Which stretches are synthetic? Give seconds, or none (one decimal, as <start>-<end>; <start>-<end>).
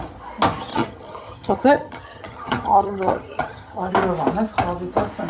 0.7-3.9